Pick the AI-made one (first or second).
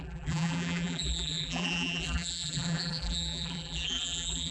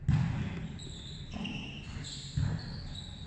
first